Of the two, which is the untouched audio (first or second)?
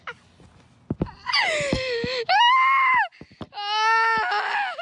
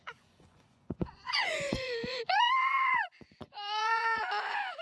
first